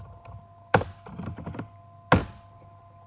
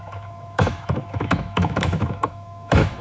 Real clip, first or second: first